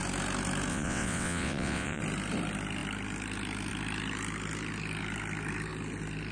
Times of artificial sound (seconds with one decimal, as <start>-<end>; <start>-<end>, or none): 0.7-2.0